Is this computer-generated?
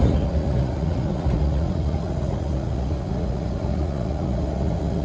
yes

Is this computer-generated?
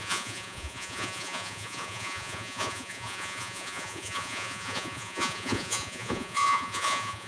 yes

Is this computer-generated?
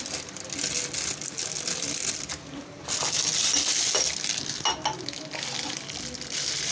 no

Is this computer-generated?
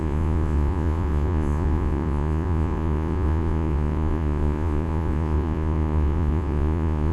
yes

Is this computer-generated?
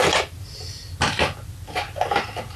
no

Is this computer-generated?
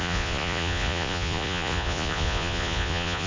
yes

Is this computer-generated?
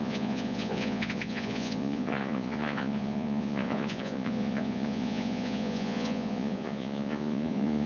yes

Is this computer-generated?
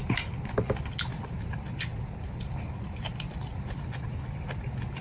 no